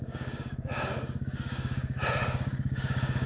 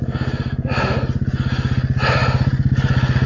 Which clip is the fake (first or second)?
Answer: first